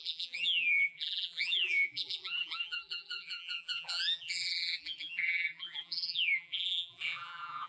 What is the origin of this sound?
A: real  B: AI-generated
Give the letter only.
B